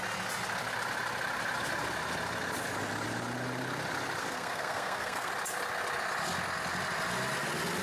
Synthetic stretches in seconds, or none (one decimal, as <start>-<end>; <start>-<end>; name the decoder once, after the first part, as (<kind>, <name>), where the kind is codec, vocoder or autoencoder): 4.2-5.3 (codec, SNAC)